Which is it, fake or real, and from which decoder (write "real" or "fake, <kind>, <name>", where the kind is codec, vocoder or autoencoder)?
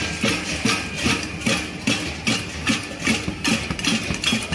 real